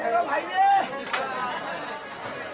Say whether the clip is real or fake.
real